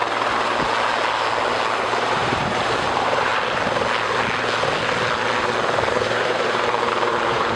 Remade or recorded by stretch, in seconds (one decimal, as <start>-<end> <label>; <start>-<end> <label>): 0.0-1.7 recorded; 1.7-3.3 remade; 3.3-5.9 recorded; 5.9-7.6 remade